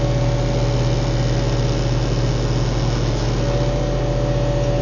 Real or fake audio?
real